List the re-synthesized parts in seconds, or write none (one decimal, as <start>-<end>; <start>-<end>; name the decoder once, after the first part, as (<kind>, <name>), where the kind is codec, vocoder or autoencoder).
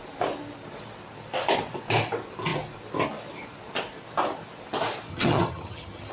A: 5.1-6.1 (vocoder, HiFi-GAN)